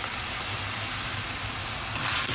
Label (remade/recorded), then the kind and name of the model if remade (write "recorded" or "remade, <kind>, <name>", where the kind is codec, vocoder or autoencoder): recorded